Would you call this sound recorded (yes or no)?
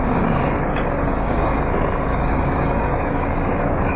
no